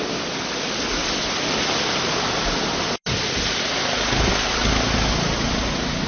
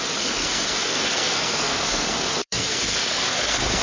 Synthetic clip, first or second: second